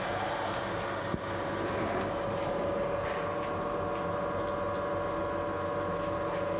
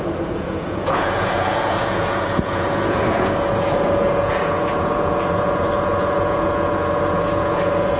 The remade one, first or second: second